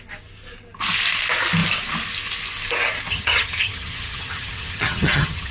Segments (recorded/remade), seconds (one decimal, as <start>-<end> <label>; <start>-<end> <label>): 0.0-3.1 recorded; 3.1-5.5 remade